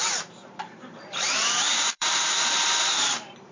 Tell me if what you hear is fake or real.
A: fake